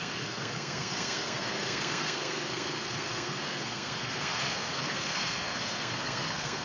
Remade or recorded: remade